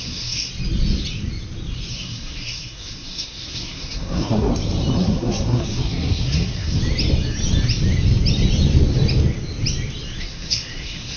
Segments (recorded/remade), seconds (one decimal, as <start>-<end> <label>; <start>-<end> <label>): 0.0-0.5 remade; 0.5-1.9 recorded; 1.9-4.5 remade; 4.5-5.0 recorded; 5.0-6.8 remade; 6.8-10.2 recorded; 10.2-11.2 remade